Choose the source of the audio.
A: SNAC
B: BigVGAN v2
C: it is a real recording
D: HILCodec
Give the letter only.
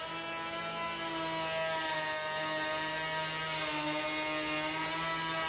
C